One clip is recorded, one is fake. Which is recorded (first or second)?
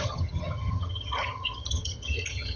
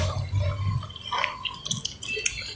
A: second